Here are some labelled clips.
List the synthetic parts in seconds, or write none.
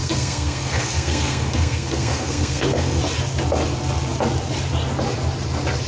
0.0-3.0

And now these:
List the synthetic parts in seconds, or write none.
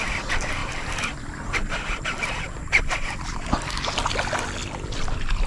0.6-3.9; 4.6-5.5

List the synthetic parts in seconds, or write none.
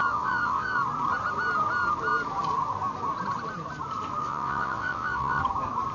0.0-0.8; 4.2-5.4